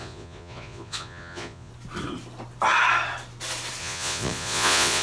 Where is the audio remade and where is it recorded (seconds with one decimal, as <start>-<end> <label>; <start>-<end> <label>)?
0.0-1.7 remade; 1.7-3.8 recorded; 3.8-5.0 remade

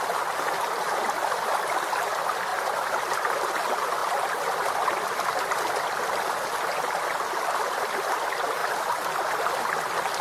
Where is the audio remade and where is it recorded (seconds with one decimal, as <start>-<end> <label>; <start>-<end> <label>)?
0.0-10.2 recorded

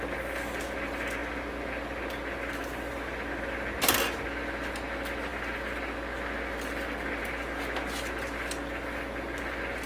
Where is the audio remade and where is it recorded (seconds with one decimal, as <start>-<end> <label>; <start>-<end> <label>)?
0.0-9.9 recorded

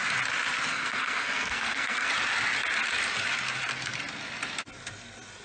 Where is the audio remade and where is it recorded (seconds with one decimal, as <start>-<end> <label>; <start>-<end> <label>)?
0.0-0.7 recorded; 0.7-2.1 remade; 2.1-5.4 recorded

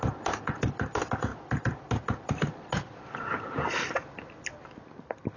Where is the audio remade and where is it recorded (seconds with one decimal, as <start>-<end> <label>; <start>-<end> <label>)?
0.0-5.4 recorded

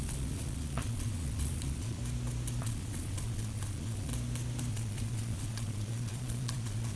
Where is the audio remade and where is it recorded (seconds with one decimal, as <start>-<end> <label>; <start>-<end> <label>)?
0.0-2.0 remade; 2.0-2.6 recorded; 2.6-4.1 remade; 4.1-4.7 recorded; 4.7-7.0 remade

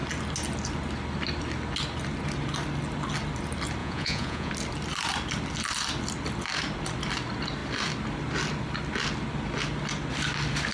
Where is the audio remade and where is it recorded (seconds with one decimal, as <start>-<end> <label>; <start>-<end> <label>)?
0.0-3.8 recorded; 3.8-4.5 remade; 4.5-10.7 recorded